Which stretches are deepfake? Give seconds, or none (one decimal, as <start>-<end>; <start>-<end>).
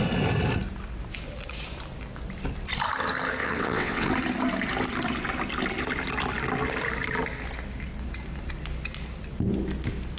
3.4-4.1